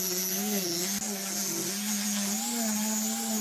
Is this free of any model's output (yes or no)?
yes